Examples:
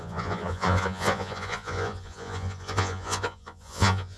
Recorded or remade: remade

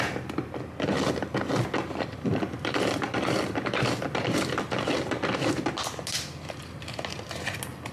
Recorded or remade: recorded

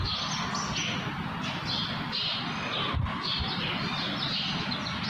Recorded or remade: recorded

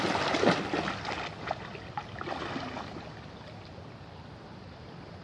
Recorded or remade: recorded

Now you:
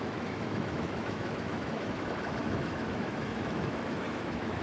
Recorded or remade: remade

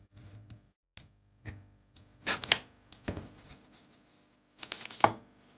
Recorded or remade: recorded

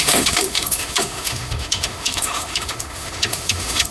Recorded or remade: remade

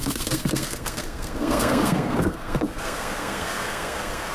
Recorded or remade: remade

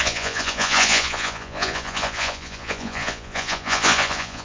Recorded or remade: remade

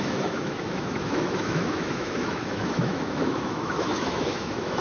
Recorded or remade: remade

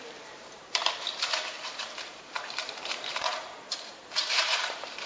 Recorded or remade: remade